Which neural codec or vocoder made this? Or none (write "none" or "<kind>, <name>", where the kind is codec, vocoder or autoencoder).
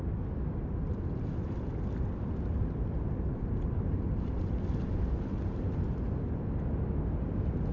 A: none